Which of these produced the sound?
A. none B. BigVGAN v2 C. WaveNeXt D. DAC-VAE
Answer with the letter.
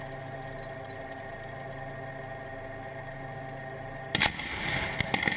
A